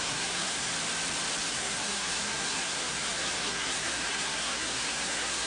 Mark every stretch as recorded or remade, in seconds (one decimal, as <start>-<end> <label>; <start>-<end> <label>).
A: 0.0-0.7 remade; 0.7-1.5 recorded; 1.5-5.5 remade